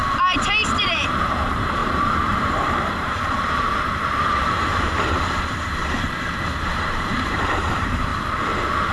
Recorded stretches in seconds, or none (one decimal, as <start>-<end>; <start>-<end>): 0.0-0.8; 8.1-8.9